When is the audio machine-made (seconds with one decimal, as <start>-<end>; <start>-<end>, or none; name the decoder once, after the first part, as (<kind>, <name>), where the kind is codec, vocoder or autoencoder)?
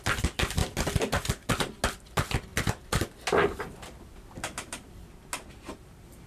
2.5-5.1 (vocoder, BigVGAN v2)